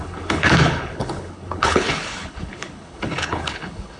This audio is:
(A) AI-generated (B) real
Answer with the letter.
A